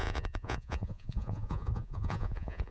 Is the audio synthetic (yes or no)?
yes